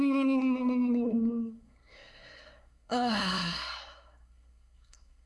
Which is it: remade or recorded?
remade